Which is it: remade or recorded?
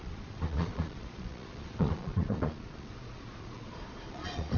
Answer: remade